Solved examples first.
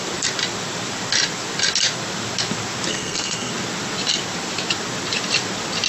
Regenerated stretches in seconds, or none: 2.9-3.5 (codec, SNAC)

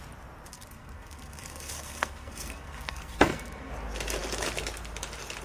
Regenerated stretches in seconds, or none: 0.5-3.7 (codec, SNAC)

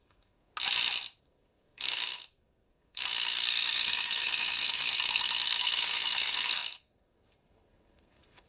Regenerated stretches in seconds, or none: 0.0-0.5 (codec, SNAC); 1.2-8.5

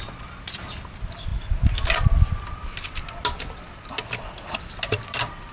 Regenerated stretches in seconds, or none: none